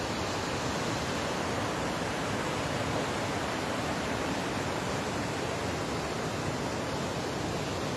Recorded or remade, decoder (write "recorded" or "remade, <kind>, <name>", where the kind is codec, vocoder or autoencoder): recorded